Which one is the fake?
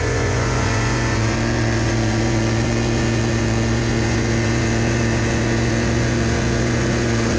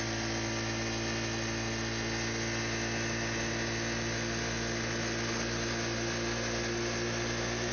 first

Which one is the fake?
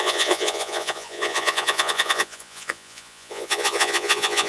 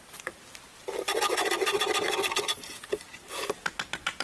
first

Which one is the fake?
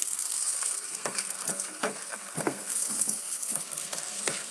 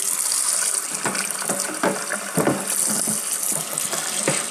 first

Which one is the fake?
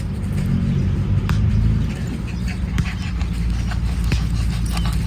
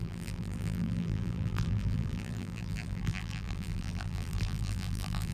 second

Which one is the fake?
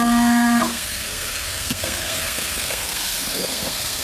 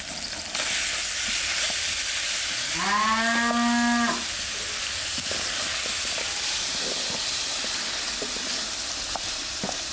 first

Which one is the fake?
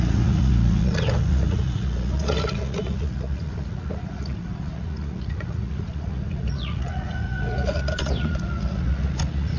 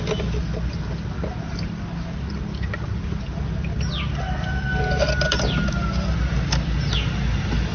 first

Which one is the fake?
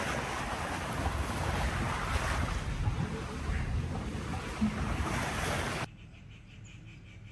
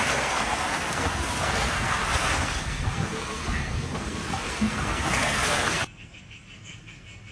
second